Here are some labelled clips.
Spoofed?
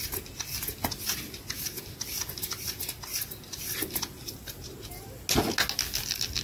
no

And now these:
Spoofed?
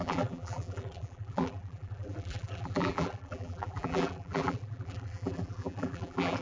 yes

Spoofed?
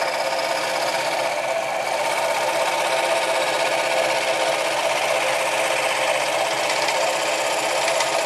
no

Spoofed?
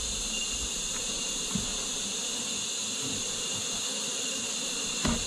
no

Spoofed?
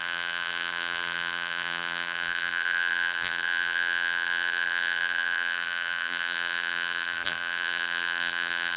yes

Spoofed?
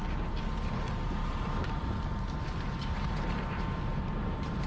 yes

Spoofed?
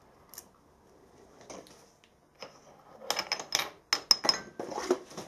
no